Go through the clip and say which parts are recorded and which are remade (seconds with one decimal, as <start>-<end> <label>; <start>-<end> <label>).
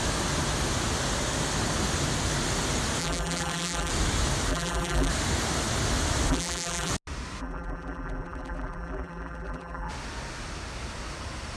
0.0-3.0 recorded; 3.0-3.9 remade; 3.9-4.5 recorded; 4.5-5.1 remade; 5.1-6.3 recorded; 6.3-6.9 remade; 6.9-7.4 recorded; 7.4-9.9 remade; 9.9-11.6 recorded